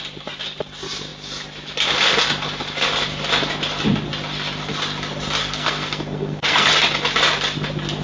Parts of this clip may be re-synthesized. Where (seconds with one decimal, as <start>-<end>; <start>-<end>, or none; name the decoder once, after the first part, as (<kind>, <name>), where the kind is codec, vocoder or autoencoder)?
5.4-6.7 (codec, SNAC)